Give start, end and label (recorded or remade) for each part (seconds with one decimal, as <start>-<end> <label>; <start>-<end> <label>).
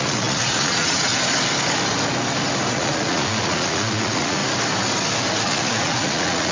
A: 0.0-1.1 remade; 1.1-2.7 recorded; 2.7-4.4 remade; 4.4-5.4 recorded; 5.4-6.5 remade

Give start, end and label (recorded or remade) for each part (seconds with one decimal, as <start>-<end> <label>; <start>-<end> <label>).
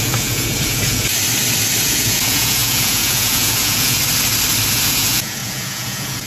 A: 0.0-1.1 remade; 1.1-1.8 recorded; 1.8-4.0 remade; 4.0-4.7 recorded; 4.7-6.3 remade